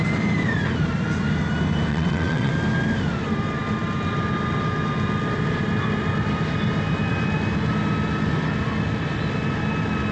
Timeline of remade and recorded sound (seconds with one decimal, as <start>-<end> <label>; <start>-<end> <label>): 0.0-1.9 recorded; 1.9-2.5 remade; 2.5-10.1 recorded